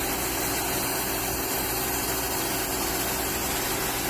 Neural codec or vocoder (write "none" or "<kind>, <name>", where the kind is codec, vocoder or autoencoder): none